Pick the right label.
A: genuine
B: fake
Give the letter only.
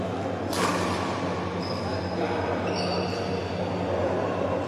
A